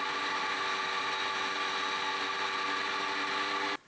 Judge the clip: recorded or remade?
recorded